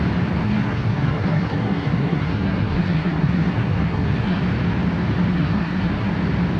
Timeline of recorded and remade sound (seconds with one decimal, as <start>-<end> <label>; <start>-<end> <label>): 0.0-0.4 recorded; 0.4-4.4 remade; 4.4-5.3 recorded; 5.3-6.1 remade; 6.1-6.6 recorded